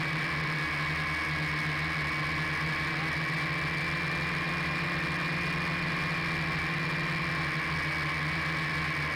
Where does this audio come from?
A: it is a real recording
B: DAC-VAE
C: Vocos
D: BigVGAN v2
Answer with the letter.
A